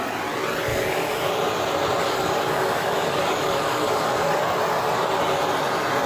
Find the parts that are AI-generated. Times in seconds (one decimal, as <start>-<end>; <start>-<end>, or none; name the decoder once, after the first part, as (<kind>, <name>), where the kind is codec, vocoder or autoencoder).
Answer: 0.7-1.3 (codec, DAC); 2.0-4.4